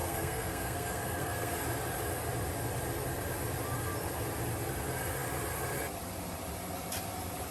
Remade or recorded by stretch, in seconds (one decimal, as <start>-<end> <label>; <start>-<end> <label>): 0.0-1.5 remade; 1.5-7.5 recorded